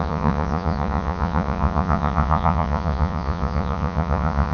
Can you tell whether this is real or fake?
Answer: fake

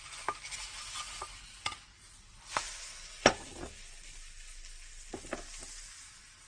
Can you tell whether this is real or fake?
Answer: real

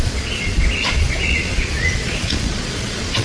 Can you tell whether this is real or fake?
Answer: fake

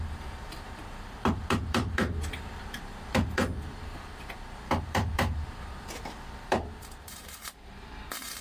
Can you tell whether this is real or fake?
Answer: fake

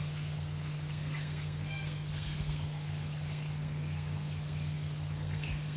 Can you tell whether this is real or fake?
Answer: fake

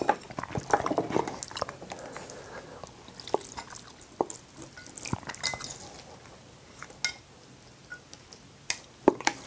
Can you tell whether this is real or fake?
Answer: real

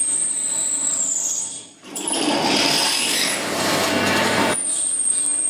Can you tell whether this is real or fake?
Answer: fake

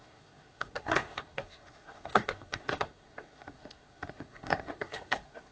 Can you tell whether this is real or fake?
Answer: fake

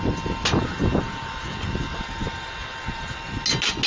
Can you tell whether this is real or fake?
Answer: real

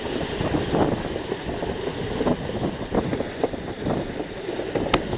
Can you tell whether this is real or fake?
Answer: real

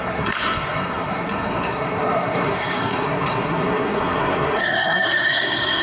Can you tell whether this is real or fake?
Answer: fake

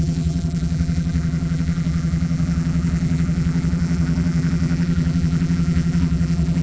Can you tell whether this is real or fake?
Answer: fake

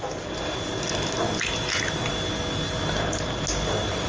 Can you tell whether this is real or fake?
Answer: real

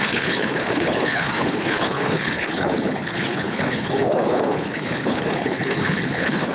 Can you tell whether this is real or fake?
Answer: fake